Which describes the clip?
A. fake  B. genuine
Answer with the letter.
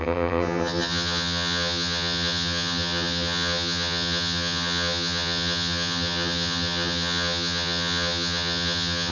A